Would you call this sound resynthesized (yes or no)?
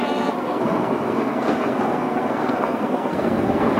yes